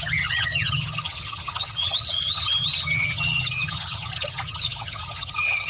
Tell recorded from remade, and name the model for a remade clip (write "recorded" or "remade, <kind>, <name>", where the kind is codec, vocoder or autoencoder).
remade, vocoder, HiFi-GAN